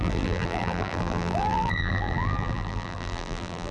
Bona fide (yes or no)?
no